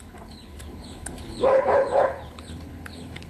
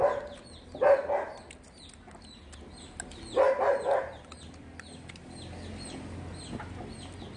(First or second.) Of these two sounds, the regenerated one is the first